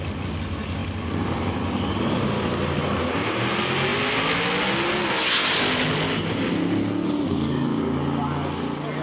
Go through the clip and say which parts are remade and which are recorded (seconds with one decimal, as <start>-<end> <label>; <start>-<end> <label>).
0.0-9.0 recorded